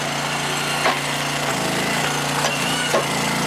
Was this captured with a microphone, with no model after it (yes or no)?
yes